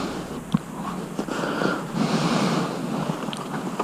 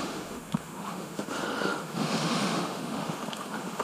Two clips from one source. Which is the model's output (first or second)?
second